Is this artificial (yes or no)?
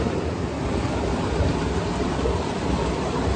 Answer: yes